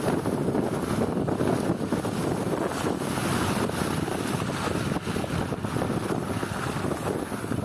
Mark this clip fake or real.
real